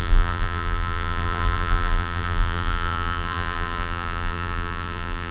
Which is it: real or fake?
fake